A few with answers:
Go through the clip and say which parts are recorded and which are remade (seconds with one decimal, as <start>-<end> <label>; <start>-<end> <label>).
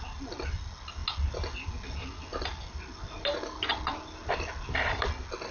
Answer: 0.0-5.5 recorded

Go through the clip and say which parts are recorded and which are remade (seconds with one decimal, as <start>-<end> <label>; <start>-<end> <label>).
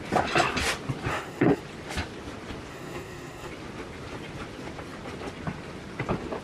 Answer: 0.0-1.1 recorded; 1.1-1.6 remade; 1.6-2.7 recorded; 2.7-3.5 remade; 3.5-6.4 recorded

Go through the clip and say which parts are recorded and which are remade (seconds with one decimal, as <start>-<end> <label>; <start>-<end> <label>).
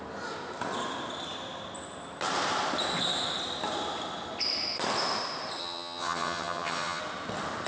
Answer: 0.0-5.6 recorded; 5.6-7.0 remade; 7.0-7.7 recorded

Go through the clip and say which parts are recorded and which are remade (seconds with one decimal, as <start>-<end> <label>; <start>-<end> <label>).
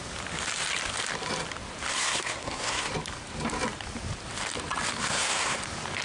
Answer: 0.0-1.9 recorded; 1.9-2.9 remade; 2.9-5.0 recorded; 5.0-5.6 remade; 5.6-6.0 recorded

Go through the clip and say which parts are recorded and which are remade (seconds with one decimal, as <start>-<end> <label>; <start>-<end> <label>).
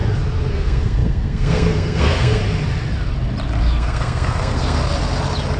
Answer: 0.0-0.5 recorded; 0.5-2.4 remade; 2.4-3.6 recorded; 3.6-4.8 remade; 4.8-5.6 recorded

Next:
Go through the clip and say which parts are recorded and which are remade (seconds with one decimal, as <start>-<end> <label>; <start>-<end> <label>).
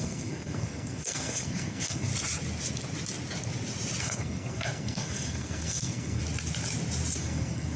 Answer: 0.0-2.1 remade; 2.1-4.0 recorded; 4.0-6.2 remade; 6.2-7.2 recorded; 7.2-7.8 remade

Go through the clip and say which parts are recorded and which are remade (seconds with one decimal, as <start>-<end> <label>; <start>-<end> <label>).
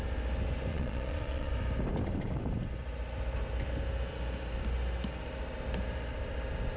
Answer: 0.0-0.7 recorded; 0.7-1.5 remade; 1.5-6.8 recorded